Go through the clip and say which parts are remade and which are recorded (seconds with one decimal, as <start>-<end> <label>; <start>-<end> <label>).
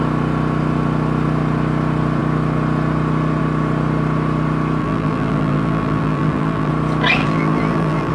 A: 0.0-4.8 recorded; 4.8-6.7 remade; 6.7-7.2 recorded; 7.2-8.1 remade